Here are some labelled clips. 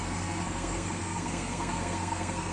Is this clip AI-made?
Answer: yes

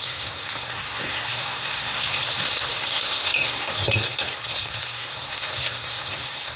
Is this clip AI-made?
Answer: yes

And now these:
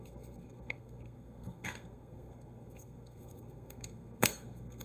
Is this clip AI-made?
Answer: yes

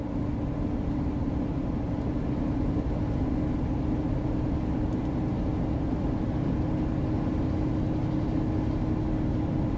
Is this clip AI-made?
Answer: no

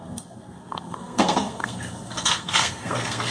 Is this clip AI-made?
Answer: yes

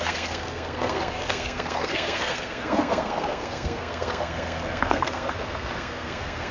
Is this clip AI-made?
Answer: yes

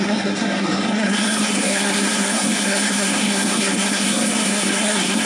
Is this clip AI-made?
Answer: yes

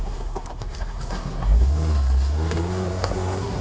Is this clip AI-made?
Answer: yes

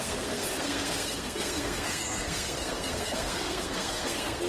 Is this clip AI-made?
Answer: yes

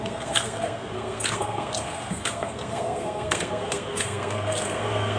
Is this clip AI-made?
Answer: yes